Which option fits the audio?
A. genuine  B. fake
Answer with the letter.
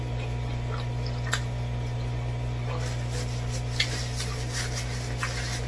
A